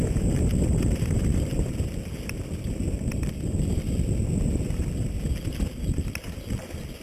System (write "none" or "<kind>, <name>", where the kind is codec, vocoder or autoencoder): none